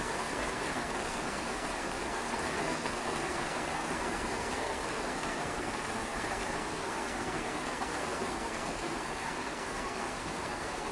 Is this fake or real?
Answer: fake